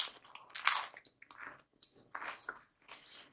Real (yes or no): yes